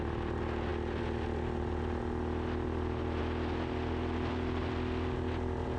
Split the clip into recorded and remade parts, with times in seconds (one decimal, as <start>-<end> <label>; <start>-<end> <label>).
0.0-5.8 recorded